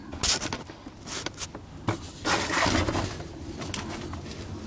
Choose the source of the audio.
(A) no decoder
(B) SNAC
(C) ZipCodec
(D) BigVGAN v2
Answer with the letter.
A